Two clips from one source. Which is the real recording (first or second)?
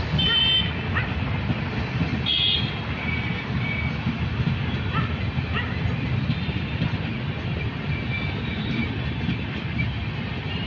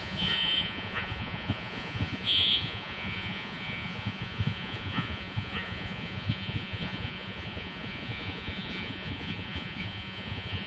first